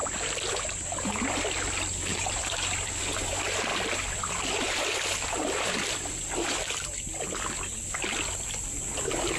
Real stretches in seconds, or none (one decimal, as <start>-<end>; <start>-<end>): 0.6-2.1; 3.0-3.7; 7.2-9.4